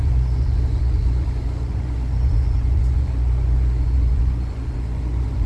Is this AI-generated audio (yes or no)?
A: yes